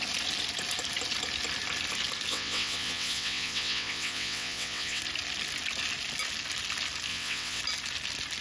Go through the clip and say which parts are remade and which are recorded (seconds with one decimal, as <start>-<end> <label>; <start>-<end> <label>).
0.0-2.3 recorded; 2.3-5.0 remade; 5.0-7.1 recorded; 7.1-7.6 remade; 7.6-8.4 recorded